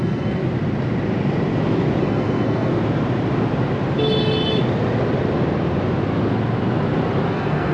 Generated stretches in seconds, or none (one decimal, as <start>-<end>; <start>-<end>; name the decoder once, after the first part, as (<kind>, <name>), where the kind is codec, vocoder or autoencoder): 0.0-0.4 (codec, SNAC); 2.0-2.7; 7.3-7.7